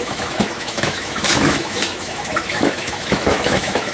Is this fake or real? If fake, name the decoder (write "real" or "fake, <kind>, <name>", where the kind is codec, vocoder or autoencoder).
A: fake, autoencoder, DAC-VAE